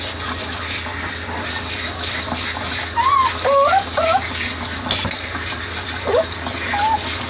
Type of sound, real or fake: real